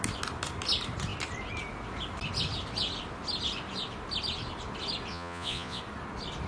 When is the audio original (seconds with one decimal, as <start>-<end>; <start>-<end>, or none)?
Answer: 0.0-5.1; 5.8-6.5